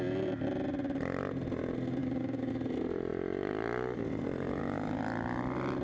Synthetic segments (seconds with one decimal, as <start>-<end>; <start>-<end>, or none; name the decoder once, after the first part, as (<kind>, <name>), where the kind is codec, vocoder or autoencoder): 2.0-2.5 (codec, DAC)